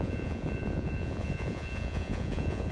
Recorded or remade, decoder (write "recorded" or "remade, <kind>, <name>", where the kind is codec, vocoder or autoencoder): remade, vocoder, Vocos